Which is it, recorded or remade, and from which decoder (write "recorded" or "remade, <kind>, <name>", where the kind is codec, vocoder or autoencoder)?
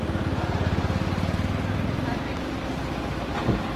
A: recorded